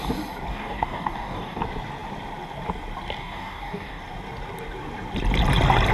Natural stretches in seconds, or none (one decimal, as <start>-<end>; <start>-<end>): 0.0-0.5; 1.6-3.2; 4.0-5.9